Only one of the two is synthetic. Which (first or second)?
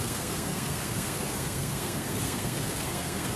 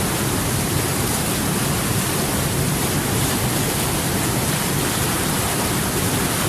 first